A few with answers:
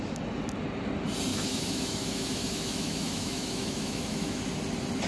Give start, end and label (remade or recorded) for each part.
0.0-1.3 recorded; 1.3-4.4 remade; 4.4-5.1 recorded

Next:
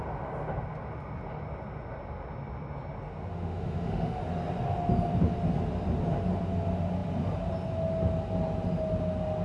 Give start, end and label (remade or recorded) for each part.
0.0-3.3 recorded; 3.3-4.2 remade; 4.2-9.4 recorded